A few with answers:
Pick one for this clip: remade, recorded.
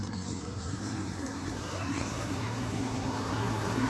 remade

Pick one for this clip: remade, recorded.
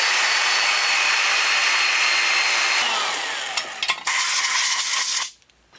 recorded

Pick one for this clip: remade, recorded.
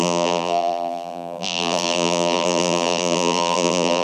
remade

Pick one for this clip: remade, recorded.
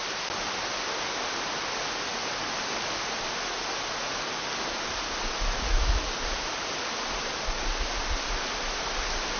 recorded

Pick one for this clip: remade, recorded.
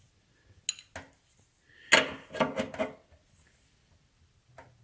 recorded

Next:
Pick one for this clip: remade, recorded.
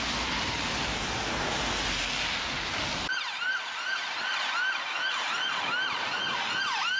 recorded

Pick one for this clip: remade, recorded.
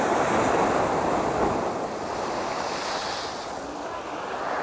recorded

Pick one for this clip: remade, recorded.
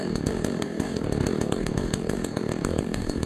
remade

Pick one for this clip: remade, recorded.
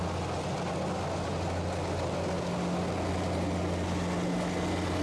recorded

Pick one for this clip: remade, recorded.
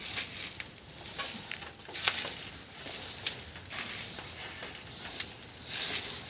recorded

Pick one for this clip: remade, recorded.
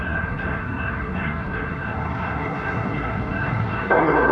remade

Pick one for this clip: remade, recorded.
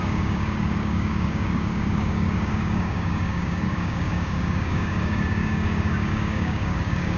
remade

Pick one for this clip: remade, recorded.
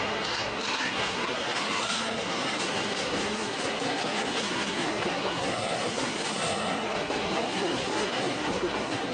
remade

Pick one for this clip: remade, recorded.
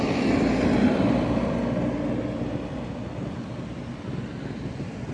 recorded